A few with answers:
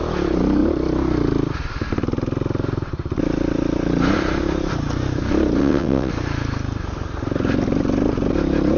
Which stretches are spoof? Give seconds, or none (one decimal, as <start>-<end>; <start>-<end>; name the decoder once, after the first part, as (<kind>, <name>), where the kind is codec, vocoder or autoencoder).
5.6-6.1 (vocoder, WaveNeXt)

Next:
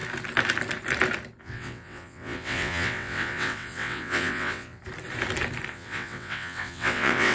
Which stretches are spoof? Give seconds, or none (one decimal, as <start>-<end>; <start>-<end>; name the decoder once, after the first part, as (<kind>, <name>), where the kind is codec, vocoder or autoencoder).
1.4-4.8 (vocoder, WaveNeXt); 5.7-7.3

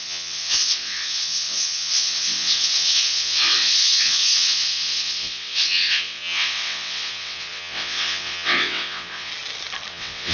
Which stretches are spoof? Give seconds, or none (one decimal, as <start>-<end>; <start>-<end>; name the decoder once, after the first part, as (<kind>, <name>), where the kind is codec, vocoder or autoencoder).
0.0-9.3 (vocoder, WaveNeXt); 9.9-10.3